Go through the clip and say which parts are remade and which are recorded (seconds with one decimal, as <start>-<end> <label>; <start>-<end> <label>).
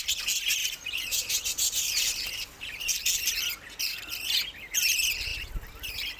0.0-0.6 recorded; 0.6-2.8 remade; 2.8-6.2 recorded